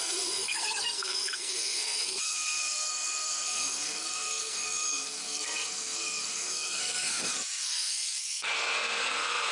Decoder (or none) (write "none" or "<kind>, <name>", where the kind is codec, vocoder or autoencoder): codec, SNAC